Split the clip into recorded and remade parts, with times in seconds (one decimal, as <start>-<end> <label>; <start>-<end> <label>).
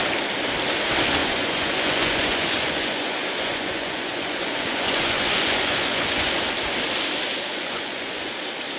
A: 0.0-1.2 recorded; 1.2-6.4 remade; 6.4-7.5 recorded; 7.5-8.3 remade; 8.3-8.8 recorded